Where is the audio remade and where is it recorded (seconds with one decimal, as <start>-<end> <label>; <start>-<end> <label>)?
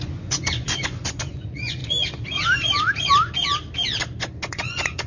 0.0-1.8 remade; 1.8-4.5 recorded; 4.5-5.1 remade